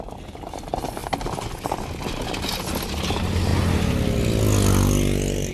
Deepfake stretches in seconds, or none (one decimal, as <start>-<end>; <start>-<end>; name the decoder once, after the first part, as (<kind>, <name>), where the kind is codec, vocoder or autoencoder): none